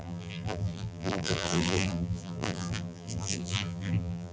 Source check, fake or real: fake